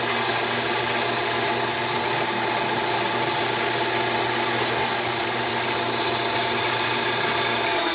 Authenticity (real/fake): real